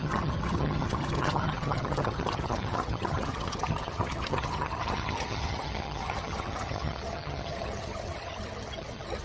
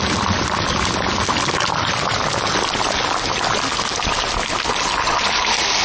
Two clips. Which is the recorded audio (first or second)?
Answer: second